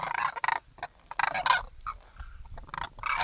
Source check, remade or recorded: recorded